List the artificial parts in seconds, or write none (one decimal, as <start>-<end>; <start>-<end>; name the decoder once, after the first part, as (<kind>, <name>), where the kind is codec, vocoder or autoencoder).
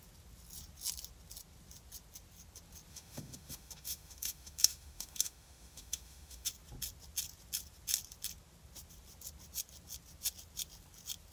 2.9-6.5 (autoencoder, DAC-VAE)